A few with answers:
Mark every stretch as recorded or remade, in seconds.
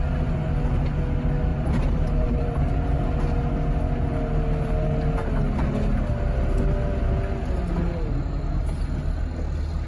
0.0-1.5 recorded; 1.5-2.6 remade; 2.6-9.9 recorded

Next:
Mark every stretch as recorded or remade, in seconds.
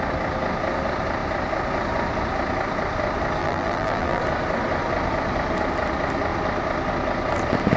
0.0-3.4 recorded; 3.4-4.2 remade; 4.2-7.8 recorded